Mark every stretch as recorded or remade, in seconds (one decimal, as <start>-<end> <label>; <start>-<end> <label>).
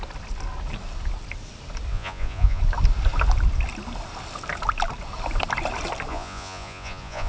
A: 0.0-1.9 recorded; 1.9-2.6 remade; 2.6-6.1 recorded; 6.1-7.3 remade